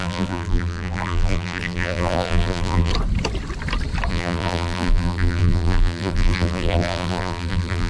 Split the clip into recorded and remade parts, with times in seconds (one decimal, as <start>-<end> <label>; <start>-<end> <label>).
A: 0.0-2.9 remade; 2.9-4.1 recorded; 4.1-7.9 remade